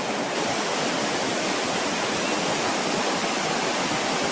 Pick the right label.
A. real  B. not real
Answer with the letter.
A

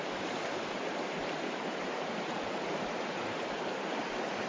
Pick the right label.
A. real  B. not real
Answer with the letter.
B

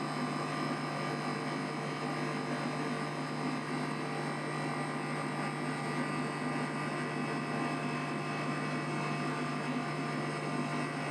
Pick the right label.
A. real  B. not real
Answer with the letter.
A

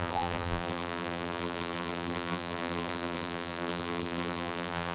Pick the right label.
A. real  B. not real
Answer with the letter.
B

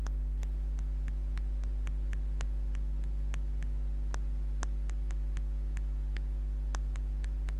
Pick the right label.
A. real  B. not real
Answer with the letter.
A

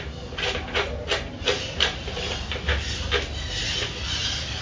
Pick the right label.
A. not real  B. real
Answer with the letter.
B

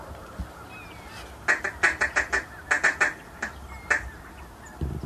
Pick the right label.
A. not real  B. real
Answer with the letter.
B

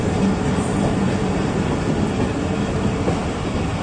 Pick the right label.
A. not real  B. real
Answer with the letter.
B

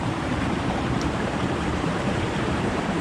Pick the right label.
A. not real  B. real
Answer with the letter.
A